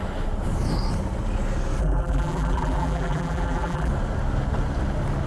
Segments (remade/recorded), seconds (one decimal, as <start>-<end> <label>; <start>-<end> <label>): 0.0-1.8 recorded; 1.8-3.9 remade; 3.9-5.3 recorded